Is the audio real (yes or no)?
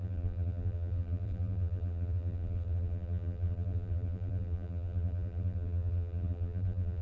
no